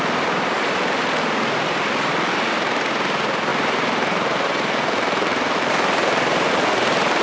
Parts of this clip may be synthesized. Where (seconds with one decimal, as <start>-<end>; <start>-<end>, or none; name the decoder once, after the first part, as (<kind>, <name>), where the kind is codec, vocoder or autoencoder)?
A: 3.5-6.5 (vocoder, BigVGAN v2)